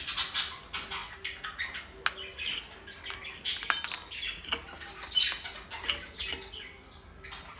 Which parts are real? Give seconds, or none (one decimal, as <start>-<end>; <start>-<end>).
0.0-7.6